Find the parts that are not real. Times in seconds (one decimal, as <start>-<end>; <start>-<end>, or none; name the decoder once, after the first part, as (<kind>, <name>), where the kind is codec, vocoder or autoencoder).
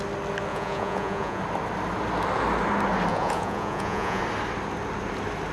0.5-1.4 (vocoder, Vocos); 3.1-4.2